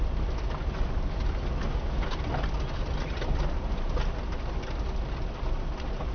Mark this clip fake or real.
real